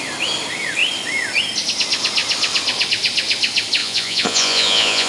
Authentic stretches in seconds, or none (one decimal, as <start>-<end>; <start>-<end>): 0.0-3.8